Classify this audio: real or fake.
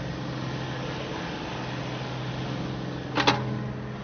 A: real